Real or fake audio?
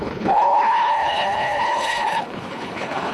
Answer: fake